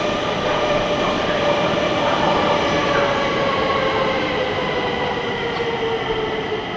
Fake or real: real